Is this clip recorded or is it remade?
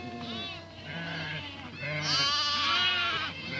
recorded